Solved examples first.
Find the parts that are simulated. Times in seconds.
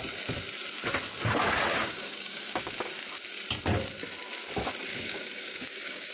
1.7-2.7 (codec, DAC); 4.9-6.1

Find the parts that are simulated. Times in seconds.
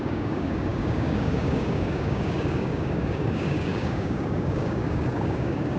0.0-5.8 (codec, DAC)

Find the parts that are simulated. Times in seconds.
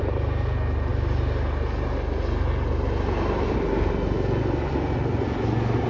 none